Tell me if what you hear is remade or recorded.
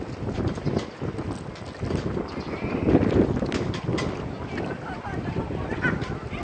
recorded